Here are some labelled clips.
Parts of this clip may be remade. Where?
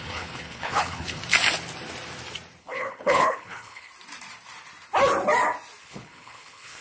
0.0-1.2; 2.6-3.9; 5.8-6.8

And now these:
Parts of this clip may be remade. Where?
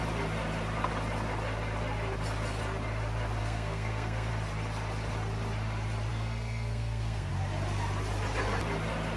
3.4-4.3; 6.1-7.3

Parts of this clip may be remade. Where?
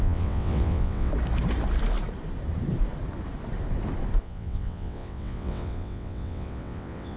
0.0-1.1; 4.2-7.2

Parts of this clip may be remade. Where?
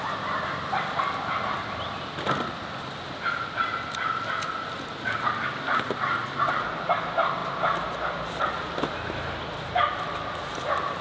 none